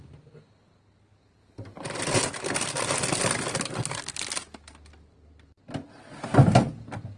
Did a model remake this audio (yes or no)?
no